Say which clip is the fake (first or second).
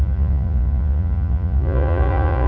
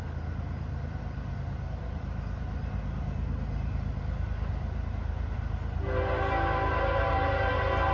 first